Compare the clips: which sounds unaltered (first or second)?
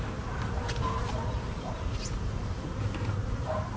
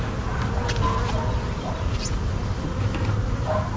second